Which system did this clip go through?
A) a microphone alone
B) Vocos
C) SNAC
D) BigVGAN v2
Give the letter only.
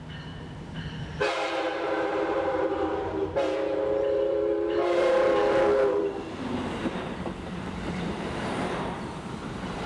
D